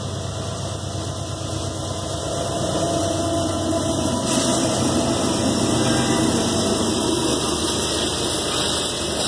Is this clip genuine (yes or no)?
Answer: yes